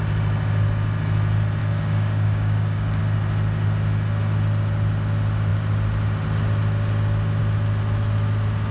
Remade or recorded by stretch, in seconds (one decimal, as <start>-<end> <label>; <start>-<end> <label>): 0.0-1.6 recorded; 1.6-3.0 remade; 3.0-8.7 recorded